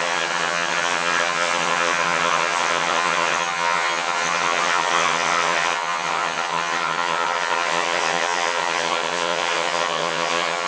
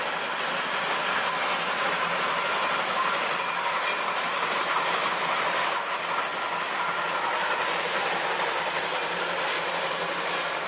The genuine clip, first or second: second